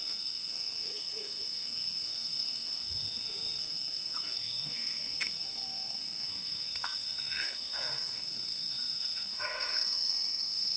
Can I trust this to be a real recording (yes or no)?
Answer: no